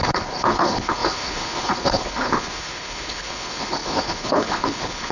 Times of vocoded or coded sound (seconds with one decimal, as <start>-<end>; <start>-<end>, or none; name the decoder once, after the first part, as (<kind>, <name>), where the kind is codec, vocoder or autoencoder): 0.0-5.1 (codec, HILCodec)